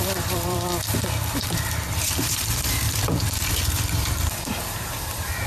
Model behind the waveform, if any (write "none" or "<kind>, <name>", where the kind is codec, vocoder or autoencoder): vocoder, BigVGAN v2